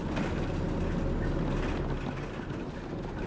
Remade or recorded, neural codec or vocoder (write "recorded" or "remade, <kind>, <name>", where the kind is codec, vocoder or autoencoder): recorded